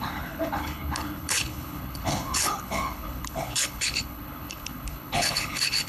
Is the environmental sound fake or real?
fake